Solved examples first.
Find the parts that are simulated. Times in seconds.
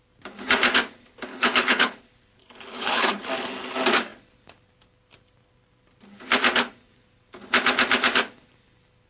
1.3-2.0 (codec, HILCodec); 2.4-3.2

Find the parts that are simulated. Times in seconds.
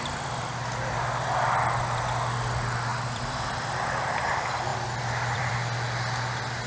2.9-4.1 (vocoder, BigVGAN v2); 4.7-5.5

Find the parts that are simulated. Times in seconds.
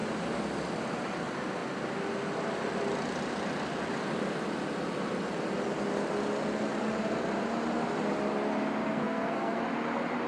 8.8-9.6 (codec, SNAC)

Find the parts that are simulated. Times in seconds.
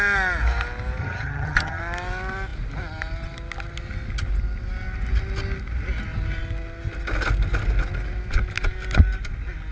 1.0-1.8 (vocoder, HiFi-GAN)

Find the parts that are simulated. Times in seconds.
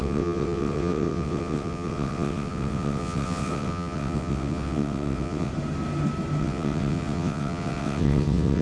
0.0-5.5 (vocoder, WaveNeXt); 6.4-8.6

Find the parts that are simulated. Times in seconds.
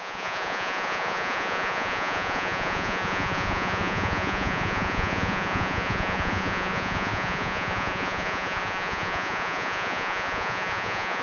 0.0-11.2 (vocoder, Vocos)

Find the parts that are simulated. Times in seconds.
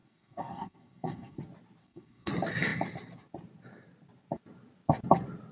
0.0-1.4 (codec, SNAC); 1.8-2.3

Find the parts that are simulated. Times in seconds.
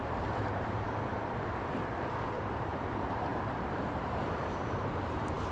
0.0-1.1 (vocoder, BigVGAN v2); 2.3-5.5